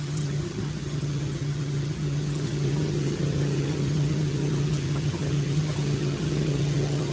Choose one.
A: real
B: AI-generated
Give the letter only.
B